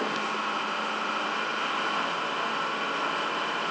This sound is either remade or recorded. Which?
recorded